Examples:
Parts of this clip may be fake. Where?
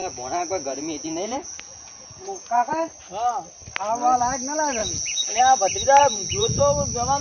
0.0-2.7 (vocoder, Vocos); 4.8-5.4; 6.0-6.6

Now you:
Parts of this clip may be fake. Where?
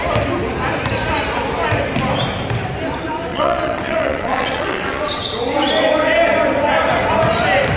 3.3-5.3 (vocoder, WaveNeXt)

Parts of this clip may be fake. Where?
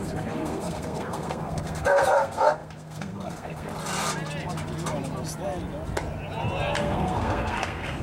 0.0-3.7 (codec, SNAC); 6.8-8.0